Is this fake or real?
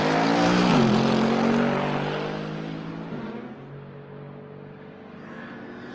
real